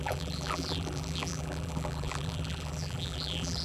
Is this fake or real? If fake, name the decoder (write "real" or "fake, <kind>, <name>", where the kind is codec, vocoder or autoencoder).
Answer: fake, vocoder, BigVGAN v2